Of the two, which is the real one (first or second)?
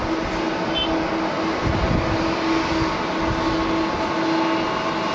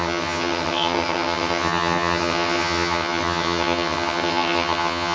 first